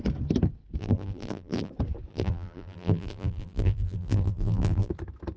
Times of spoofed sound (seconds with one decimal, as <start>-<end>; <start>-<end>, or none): 0.8-1.7; 2.1-4.9

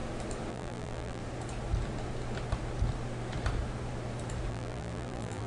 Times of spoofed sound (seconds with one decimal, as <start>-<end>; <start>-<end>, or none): 0.5-1.2; 4.5-5.5

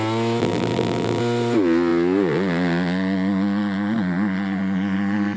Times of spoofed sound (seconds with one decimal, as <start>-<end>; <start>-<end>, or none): 0.4-1.2